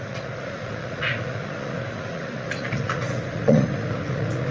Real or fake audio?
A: fake